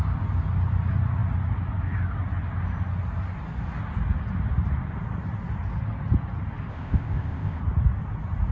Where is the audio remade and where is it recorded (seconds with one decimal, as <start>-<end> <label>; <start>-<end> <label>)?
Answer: 0.0-6.7 recorded; 6.7-7.6 remade; 7.6-8.5 recorded